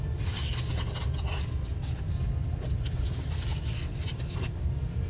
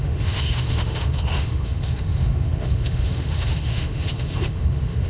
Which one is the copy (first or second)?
second